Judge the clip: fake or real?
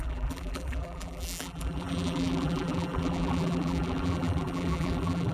fake